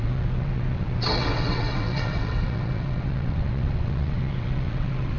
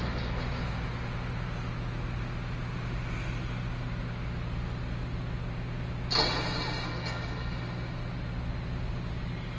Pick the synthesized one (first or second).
first